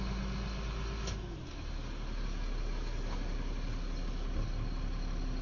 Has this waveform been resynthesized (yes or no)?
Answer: no